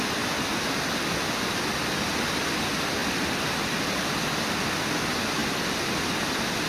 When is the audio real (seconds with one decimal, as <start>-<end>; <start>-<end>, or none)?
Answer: 0.0-6.7

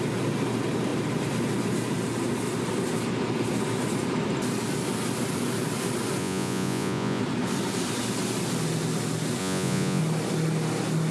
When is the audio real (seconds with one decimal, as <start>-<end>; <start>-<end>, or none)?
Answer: 0.0-6.2; 7.2-9.4; 10.0-11.1